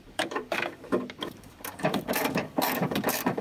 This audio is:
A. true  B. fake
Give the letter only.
B